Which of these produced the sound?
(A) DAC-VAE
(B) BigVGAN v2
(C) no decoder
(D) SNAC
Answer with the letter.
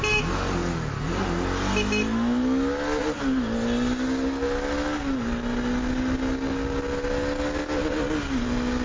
C